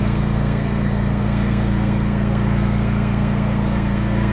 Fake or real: fake